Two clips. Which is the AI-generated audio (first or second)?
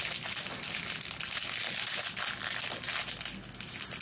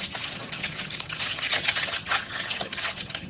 second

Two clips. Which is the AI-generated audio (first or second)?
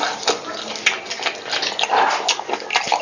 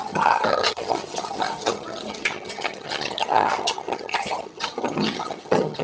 second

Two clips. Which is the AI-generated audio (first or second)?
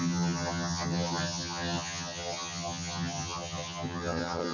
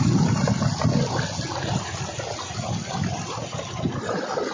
first